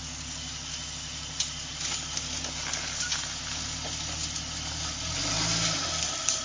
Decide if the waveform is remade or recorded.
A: recorded